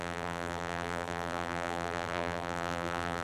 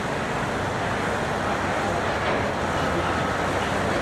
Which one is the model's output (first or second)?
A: first